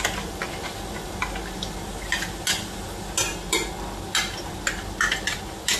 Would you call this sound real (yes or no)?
yes